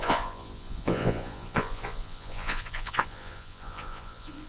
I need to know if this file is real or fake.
fake